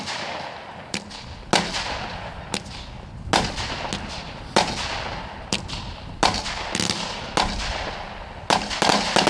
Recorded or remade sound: recorded